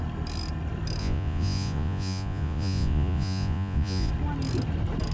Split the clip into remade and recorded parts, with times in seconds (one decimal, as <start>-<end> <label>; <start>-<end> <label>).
0.0-1.0 recorded; 1.0-4.1 remade; 4.1-5.1 recorded